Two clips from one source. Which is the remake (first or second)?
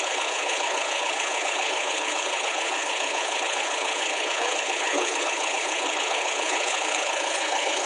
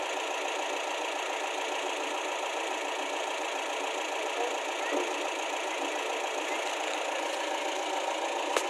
first